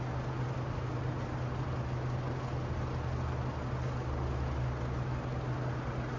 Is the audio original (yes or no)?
yes